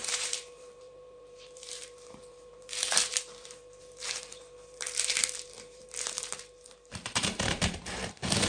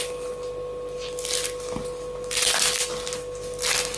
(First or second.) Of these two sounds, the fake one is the first